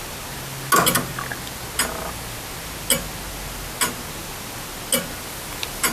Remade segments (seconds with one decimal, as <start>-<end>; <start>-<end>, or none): none